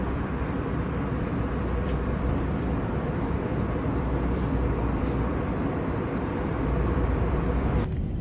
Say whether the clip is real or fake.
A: fake